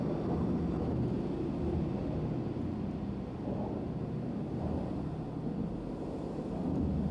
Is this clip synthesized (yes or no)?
no